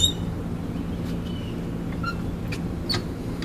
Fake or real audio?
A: real